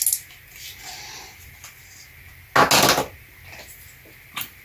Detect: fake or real real